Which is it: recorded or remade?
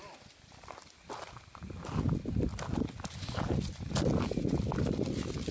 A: recorded